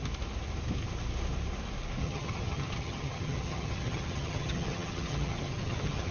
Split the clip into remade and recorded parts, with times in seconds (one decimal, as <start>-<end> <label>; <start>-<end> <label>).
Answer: 0.0-2.0 recorded; 2.0-6.1 remade